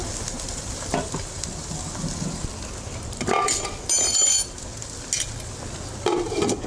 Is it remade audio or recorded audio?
recorded